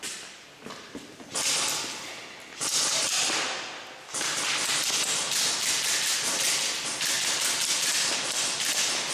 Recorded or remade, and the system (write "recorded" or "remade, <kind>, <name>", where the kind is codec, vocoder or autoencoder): recorded